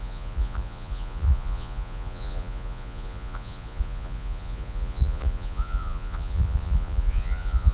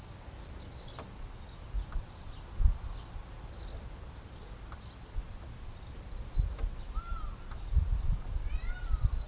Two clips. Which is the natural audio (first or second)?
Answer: second